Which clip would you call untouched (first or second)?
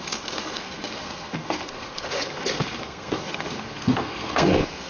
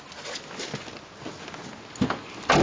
second